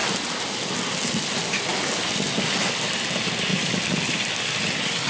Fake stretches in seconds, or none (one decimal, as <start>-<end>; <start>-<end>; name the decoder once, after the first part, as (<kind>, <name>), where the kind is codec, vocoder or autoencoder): 0.0-0.8 (vocoder, BigVGAN v2); 3.5-5.1